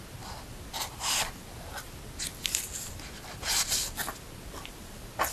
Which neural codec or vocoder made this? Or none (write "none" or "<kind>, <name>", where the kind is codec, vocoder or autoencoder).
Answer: none